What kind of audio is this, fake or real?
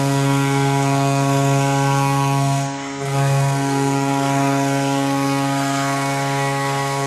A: fake